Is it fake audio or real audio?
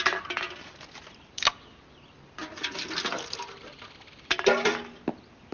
real